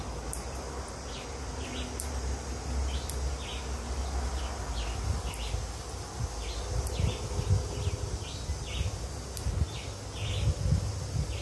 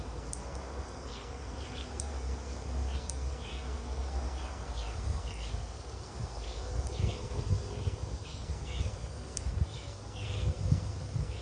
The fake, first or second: second